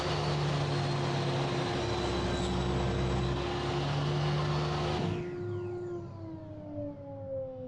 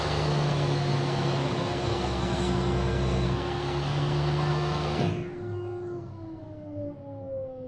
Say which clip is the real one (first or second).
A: first